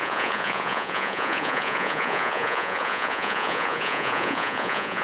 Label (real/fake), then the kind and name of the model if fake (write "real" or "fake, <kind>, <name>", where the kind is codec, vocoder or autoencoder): fake, vocoder, Vocos